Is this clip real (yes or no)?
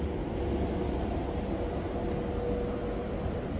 yes